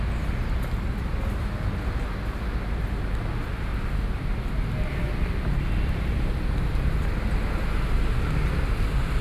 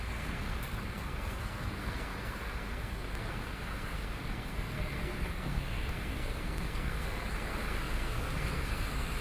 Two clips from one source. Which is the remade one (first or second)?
second